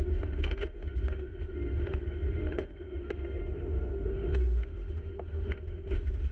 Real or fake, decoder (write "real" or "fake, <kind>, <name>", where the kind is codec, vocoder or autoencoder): fake, autoencoder, DAC-VAE